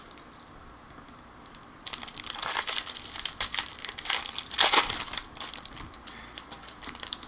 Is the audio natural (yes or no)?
no